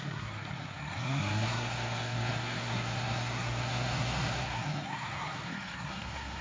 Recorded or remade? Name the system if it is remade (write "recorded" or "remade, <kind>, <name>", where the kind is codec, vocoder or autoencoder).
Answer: remade, codec, SNAC